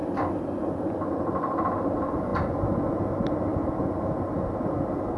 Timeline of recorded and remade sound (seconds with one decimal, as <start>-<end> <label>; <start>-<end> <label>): 0.0-5.2 recorded